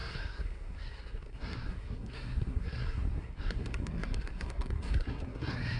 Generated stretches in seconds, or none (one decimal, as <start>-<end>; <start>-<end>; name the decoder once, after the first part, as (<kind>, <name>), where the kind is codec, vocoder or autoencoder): 0.0-5.8 (codec, SNAC)